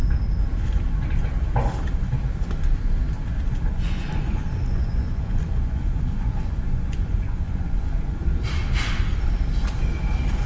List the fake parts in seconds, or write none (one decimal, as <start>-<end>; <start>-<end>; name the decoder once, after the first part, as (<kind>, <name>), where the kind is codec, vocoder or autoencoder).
3.7-8.2 (vocoder, Vocos)